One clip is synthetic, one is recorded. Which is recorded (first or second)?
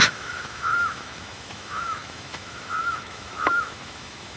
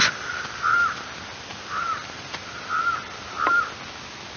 second